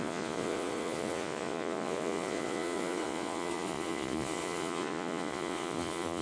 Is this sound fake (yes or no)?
yes